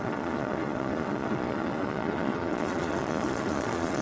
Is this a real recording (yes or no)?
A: no